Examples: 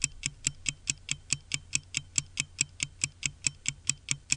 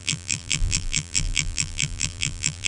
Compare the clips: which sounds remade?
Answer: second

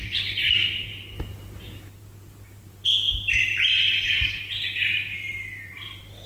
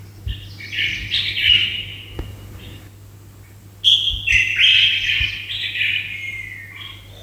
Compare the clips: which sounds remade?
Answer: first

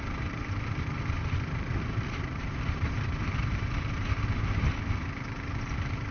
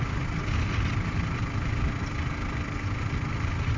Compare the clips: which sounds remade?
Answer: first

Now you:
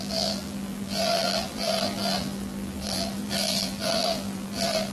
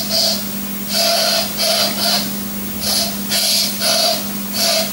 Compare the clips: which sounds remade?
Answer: first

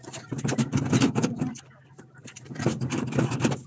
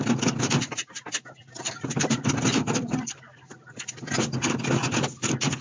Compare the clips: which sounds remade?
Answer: first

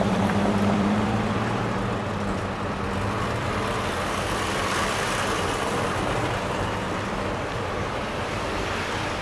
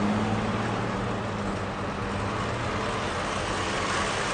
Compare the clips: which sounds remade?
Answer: first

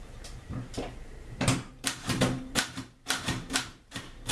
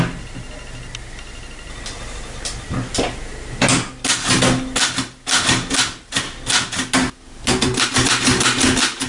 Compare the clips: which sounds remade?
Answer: first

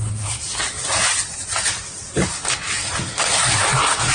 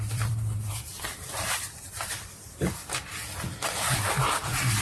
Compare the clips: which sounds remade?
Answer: second